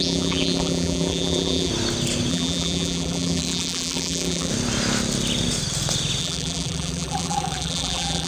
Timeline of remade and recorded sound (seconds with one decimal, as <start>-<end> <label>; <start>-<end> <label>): 0.0-1.7 remade; 1.7-2.3 recorded; 2.3-4.5 remade; 4.5-6.2 recorded; 6.2-8.3 remade